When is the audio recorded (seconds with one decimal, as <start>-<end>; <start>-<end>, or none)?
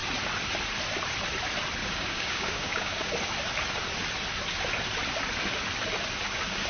0.0-1.8; 3.1-6.7